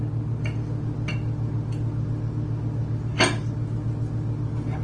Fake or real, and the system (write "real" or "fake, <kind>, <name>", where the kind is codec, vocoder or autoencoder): real